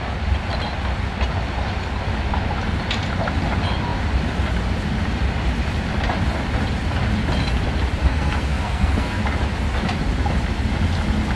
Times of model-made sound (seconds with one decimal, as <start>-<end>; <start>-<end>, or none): 8.0-9.2